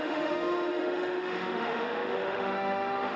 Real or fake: fake